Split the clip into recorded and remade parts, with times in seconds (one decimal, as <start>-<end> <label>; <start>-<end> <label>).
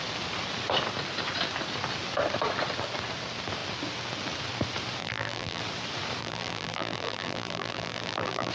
0.0-5.0 recorded; 5.0-5.6 remade; 5.6-6.2 recorded; 6.2-8.5 remade